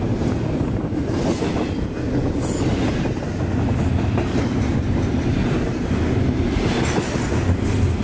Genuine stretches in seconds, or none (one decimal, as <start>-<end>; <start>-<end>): 0.0-8.0